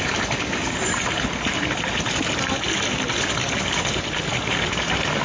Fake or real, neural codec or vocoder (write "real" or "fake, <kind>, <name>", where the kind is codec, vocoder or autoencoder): real